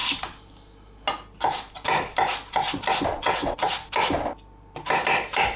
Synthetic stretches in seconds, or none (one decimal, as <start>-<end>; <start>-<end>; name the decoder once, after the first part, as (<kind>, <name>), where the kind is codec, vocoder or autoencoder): 3.1-3.7 (vocoder, WaveNeXt)